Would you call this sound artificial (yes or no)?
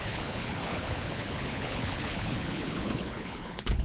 yes